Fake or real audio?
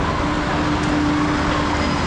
real